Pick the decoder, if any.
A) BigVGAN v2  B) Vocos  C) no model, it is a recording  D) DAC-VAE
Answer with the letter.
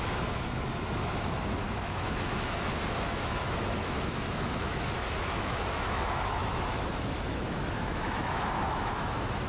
D